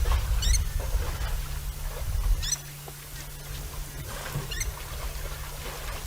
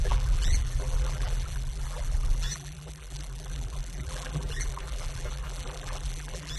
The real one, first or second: first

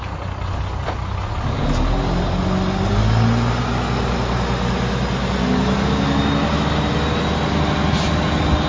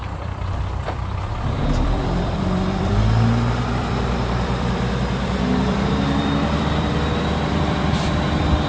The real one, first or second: first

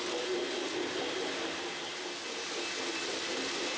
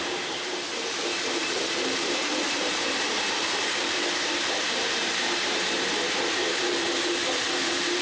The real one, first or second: first